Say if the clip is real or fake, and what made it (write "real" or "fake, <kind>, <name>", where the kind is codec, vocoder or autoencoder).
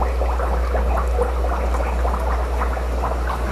real